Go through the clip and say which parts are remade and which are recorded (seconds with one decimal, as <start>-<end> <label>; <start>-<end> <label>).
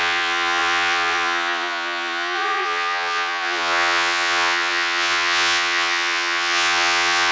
0.0-7.3 remade